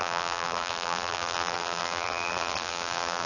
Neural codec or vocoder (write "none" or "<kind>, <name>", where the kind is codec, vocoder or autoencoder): vocoder, BigVGAN v2